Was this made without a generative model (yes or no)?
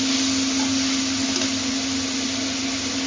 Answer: yes